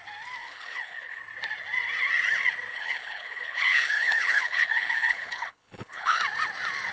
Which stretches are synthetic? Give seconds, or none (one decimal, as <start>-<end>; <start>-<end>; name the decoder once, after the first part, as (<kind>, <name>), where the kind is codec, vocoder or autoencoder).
0.4-1.2 (codec, HILCodec); 2.7-6.2